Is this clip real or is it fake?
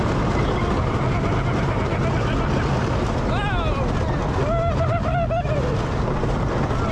real